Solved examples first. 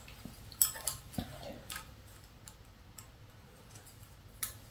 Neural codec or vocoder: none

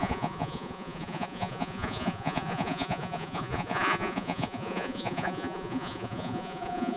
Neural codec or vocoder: vocoder, Vocos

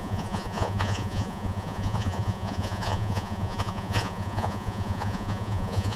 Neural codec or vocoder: vocoder, Vocos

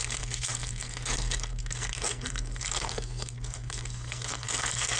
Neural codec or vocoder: codec, SNAC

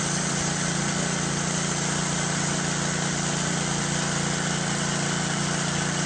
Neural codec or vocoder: none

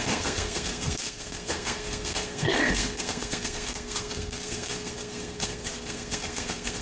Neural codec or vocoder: codec, SNAC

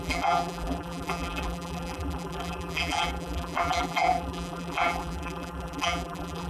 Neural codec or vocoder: vocoder, BigVGAN v2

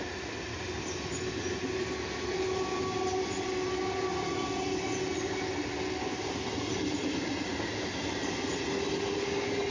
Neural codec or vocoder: none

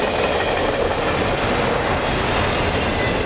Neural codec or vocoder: none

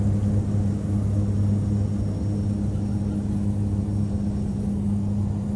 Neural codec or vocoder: none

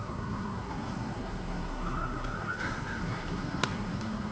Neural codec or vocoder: codec, SNAC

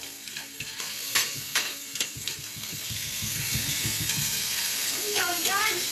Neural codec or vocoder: codec, SNAC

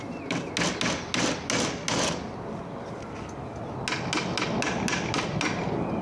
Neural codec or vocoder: none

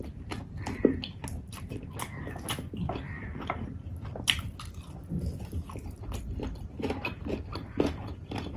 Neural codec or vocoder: none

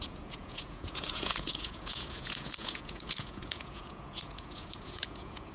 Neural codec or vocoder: vocoder, Vocos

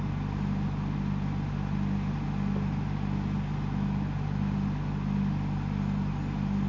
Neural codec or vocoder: none